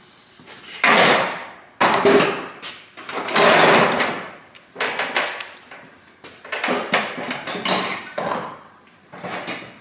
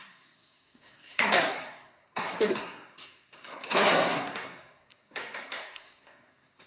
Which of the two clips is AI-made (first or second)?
second